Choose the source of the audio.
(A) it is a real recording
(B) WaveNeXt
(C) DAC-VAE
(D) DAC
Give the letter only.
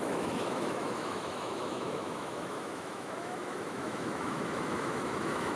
C